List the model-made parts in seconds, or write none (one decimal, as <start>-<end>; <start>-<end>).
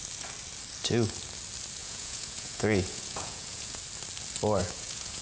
1.8-3.8; 4.6-5.2